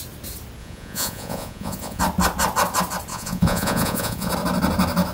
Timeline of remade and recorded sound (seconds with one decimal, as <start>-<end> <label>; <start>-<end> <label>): 0.0-0.6 recorded; 0.6-2.0 remade; 2.0-3.1 recorded; 3.1-4.3 remade; 4.3-5.1 recorded